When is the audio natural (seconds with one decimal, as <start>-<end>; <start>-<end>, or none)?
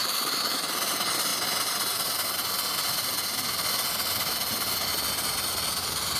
0.8-6.2